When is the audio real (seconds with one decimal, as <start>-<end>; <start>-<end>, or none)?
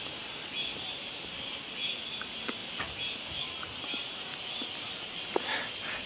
0.0-0.7; 1.4-6.1